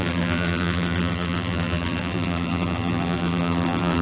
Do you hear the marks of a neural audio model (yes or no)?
yes